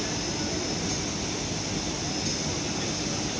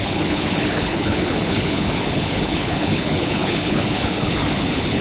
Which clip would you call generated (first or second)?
second